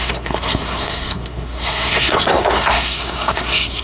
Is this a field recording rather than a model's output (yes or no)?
no